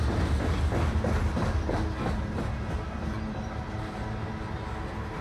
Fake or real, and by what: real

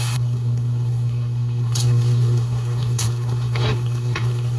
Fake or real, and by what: fake, codec, SNAC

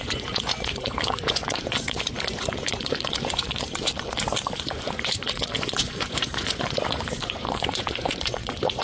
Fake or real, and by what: fake, vocoder, Vocos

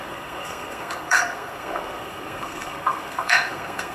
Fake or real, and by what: fake, codec, SNAC